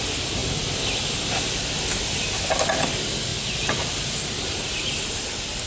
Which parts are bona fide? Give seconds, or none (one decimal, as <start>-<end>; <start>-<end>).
0.0-5.7